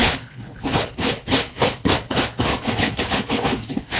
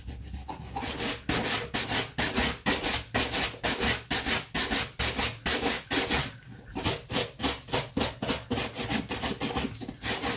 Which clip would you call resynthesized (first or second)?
first